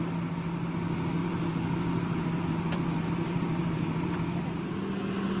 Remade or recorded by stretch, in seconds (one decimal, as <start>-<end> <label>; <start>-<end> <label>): 0.0-1.2 recorded; 1.2-4.4 remade; 4.4-5.4 recorded